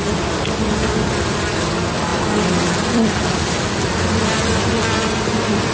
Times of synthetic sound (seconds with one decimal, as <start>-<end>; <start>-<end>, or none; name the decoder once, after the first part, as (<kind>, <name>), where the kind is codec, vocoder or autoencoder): none